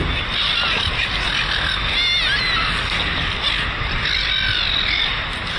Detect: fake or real real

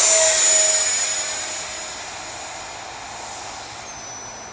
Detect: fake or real real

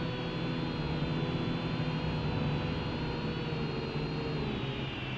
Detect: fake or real real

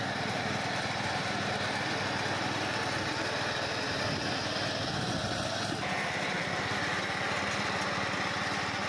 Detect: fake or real real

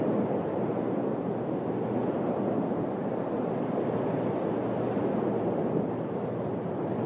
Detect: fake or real real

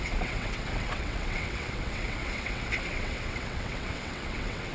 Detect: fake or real fake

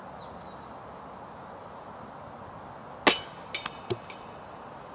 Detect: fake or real real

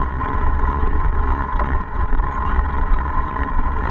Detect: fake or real fake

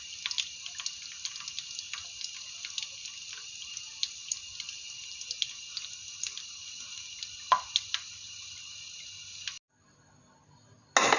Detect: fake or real real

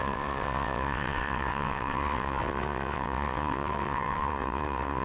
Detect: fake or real fake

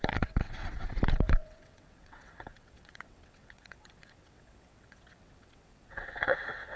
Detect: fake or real fake